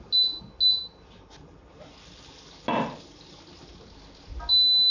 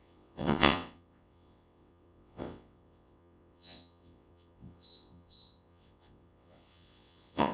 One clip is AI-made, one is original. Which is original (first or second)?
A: first